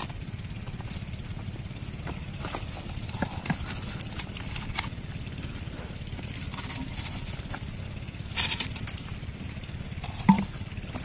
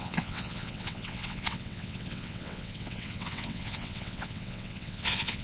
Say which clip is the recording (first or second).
first